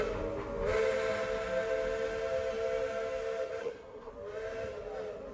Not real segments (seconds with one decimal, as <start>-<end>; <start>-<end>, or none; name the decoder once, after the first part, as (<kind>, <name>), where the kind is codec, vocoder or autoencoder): 3.6-4.1 (codec, SNAC)